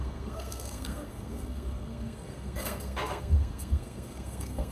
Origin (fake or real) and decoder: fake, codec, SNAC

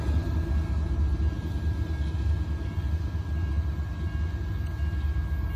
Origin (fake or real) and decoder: real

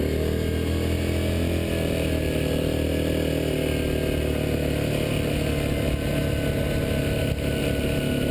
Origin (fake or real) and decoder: real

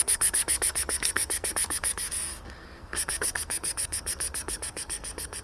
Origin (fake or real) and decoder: fake, codec, SNAC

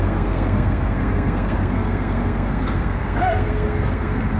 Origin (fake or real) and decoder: fake, codec, SNAC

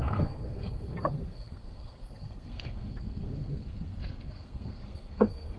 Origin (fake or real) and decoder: fake, codec, SNAC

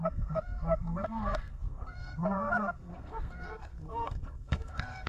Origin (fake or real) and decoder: fake, codec, SNAC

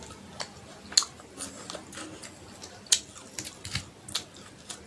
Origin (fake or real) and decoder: real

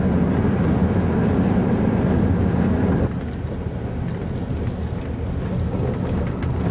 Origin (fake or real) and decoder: real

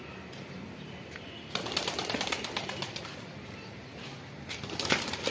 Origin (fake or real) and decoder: real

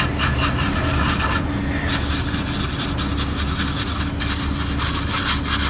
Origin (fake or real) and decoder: real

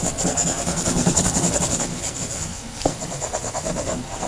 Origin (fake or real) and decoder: fake, codec, SNAC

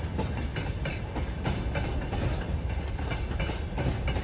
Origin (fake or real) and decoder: real